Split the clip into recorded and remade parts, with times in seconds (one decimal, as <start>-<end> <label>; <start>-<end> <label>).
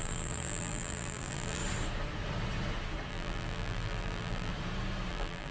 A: 0.0-1.6 remade; 1.6-3.1 recorded; 3.1-4.5 remade; 4.5-5.1 recorded; 5.1-5.5 remade